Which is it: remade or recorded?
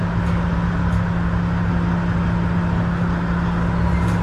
recorded